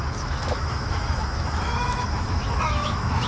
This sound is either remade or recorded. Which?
remade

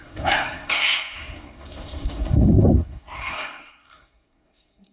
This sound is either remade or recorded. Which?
remade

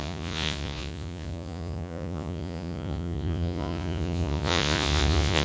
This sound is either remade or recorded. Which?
remade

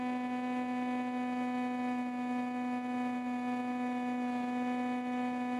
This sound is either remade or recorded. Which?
recorded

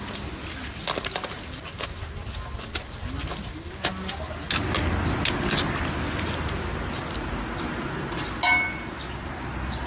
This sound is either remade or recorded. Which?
recorded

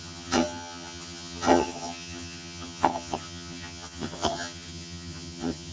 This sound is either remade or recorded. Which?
remade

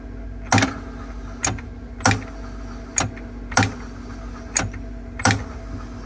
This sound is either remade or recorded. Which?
recorded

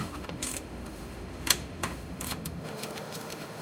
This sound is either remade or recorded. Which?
remade